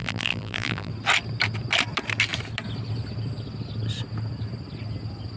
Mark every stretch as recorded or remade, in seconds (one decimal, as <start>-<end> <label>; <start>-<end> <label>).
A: 0.0-0.9 remade; 0.9-5.4 recorded